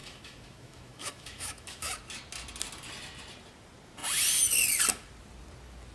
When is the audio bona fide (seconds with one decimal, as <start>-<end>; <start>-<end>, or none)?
1.9-5.9